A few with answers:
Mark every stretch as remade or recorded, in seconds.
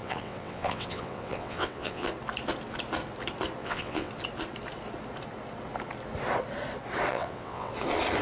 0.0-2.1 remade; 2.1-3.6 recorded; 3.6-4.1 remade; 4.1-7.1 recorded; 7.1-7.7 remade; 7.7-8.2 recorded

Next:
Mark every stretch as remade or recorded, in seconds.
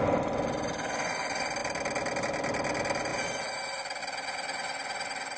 0.0-5.4 recorded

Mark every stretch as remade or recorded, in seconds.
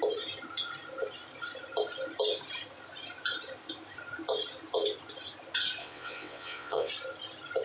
0.0-5.8 recorded; 5.8-6.9 remade; 6.9-7.6 recorded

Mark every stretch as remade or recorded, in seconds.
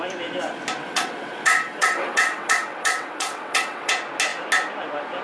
0.0-0.8 recorded; 0.8-3.9 remade; 3.9-5.2 recorded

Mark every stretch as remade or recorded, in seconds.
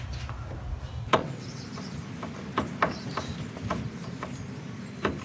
0.0-1.0 recorded; 1.0-1.6 remade; 1.6-5.2 recorded